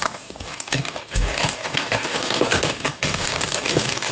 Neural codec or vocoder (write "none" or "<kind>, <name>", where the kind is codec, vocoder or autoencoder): codec, DAC